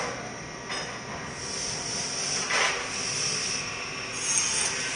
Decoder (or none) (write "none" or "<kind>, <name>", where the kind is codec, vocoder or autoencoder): none